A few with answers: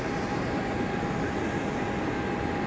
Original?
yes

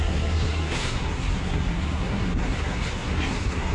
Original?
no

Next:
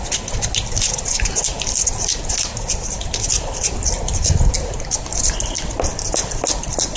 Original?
yes